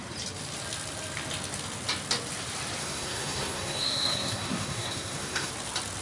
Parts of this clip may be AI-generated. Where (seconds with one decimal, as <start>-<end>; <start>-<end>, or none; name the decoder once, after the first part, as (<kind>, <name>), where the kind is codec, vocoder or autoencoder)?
2.8-5.5 (codec, SNAC)